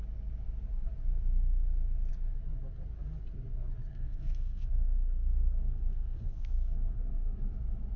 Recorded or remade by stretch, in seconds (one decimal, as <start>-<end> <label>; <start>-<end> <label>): 0.0-3.9 recorded; 3.9-7.4 remade; 7.4-8.0 recorded

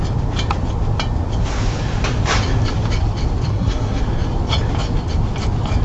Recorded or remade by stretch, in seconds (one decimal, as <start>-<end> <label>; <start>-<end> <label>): 0.0-3.5 recorded; 3.5-4.0 remade; 4.0-5.8 recorded

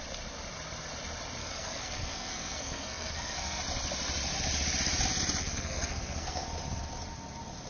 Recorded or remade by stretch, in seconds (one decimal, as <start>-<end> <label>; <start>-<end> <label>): 0.0-1.4 recorded; 1.4-3.6 remade; 3.6-5.4 recorded; 5.4-6.5 remade; 6.5-7.7 recorded